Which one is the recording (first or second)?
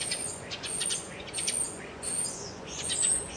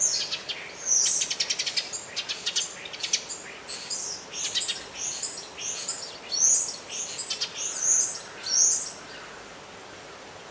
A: second